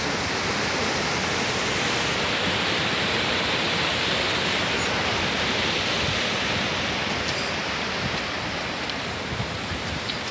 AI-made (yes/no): no